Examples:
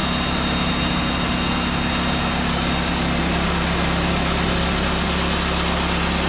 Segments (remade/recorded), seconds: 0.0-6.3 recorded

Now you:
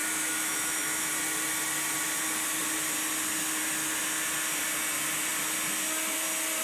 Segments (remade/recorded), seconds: 0.0-1.1 remade; 1.1-6.6 recorded

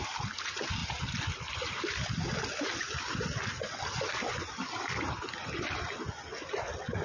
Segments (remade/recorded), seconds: 0.0-7.0 recorded